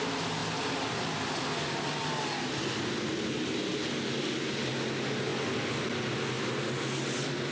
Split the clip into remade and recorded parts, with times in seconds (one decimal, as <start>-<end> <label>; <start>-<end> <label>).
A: 0.0-7.5 recorded